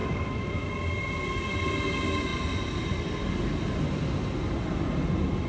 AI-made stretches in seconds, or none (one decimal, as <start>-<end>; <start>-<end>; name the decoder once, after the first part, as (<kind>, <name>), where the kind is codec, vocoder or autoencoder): 0.0-0.7 (autoencoder, DAC-VAE)